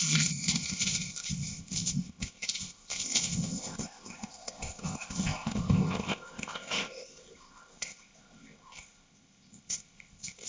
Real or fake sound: fake